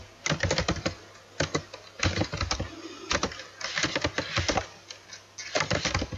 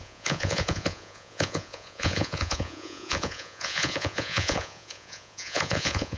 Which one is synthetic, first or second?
second